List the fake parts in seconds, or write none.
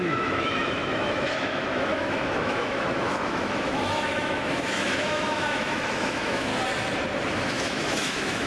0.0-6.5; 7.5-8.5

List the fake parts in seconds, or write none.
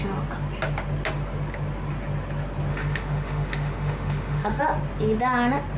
2.7-4.6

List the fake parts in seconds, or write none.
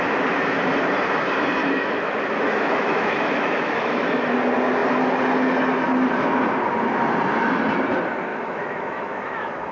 1.6-4.3; 8.3-9.7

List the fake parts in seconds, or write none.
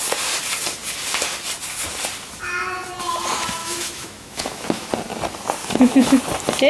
3.6-4.9; 5.6-6.2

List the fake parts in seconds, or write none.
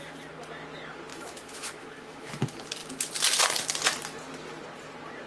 1.1-2.3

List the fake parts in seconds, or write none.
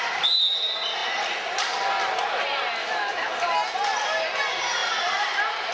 2.8-3.3